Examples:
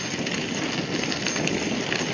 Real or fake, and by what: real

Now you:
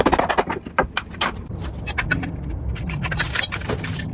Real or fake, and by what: real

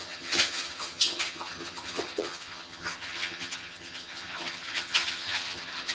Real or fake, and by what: fake, vocoder, HiFi-GAN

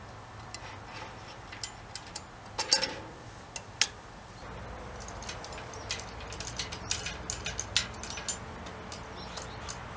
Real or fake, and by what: real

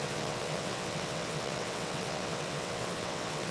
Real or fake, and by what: fake, vocoder, WaveNeXt